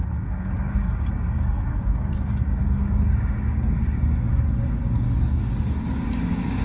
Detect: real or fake fake